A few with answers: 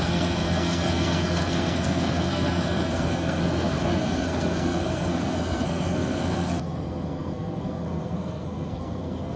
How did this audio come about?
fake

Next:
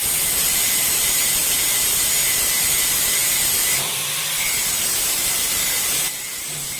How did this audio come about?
fake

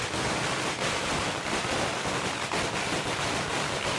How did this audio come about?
real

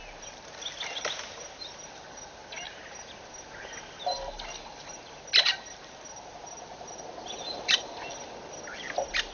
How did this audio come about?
real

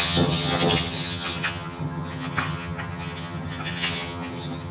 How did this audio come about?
fake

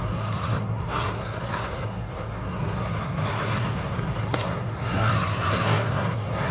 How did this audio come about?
fake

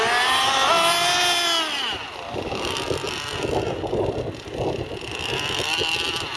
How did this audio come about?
real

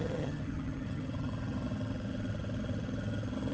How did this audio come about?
fake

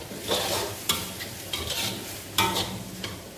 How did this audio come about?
real